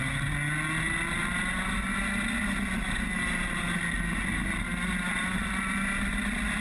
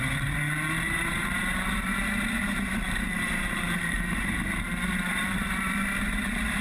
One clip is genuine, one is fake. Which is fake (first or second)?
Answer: second